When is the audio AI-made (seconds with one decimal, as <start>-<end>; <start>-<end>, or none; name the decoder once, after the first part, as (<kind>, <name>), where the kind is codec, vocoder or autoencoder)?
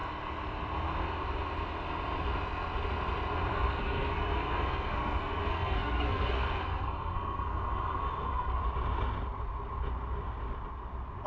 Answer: 3.5-8.6 (codec, SNAC)